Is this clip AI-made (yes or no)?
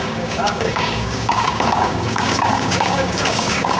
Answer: yes